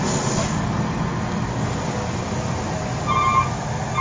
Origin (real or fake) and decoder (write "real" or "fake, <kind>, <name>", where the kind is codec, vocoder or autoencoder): real